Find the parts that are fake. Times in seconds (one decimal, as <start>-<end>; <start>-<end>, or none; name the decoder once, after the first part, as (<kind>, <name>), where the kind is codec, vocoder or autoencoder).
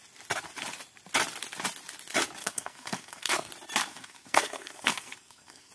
2.4-3.5 (codec, SNAC); 3.9-5.7